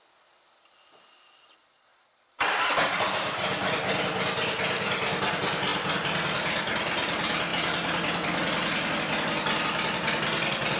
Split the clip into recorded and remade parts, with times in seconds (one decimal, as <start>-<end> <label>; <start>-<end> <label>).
0.0-10.8 recorded

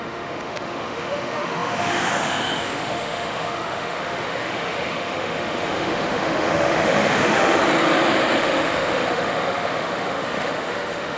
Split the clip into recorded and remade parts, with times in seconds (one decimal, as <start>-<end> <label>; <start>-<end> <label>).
0.0-7.6 remade; 7.6-8.4 recorded; 8.4-11.2 remade

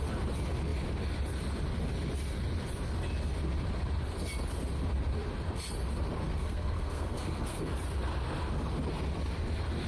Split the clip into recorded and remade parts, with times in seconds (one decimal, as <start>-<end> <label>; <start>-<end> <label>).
0.0-6.2 recorded; 6.2-7.6 remade; 7.6-9.9 recorded

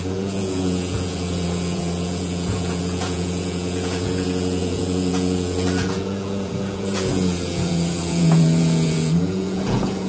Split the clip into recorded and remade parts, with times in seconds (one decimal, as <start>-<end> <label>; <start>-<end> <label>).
0.0-10.1 remade